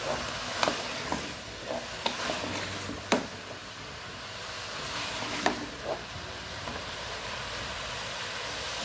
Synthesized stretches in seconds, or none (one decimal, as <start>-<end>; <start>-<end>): 3.6-7.9